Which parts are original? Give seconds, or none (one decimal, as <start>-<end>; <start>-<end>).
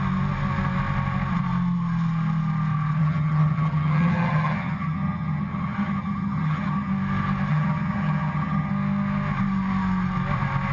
0.0-3.0; 6.9-7.5; 8.7-10.7